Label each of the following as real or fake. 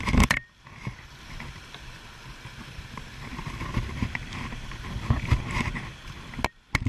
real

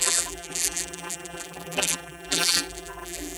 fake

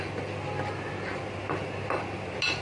real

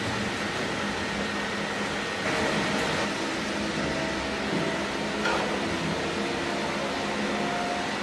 real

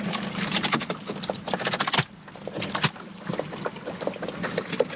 real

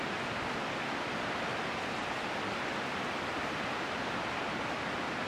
real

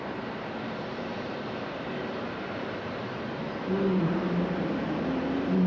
fake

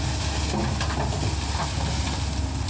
real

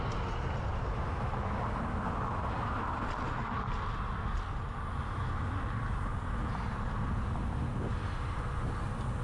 real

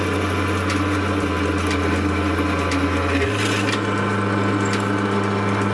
real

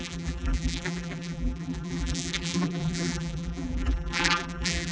fake